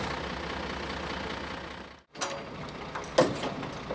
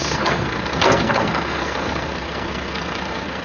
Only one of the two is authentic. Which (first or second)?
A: first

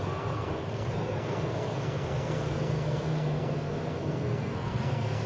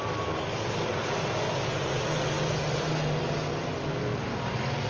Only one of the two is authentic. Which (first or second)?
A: second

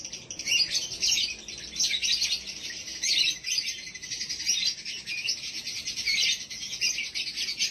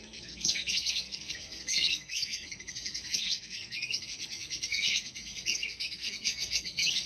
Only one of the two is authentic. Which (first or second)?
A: first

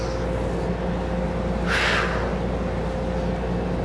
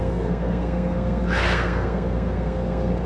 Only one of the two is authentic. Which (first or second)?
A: first